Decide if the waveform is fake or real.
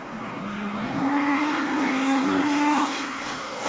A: fake